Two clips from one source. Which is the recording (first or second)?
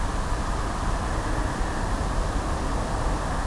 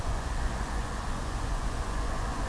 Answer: first